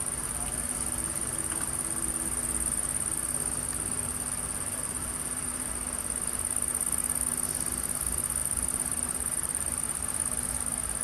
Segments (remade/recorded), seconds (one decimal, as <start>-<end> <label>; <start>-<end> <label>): 0.0-5.0 recorded; 5.0-5.7 remade; 5.7-8.4 recorded; 8.4-10.0 remade; 10.0-11.0 recorded